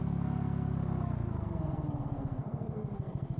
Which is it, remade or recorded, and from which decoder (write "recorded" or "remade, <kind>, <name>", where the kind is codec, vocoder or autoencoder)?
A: remade, codec, SNAC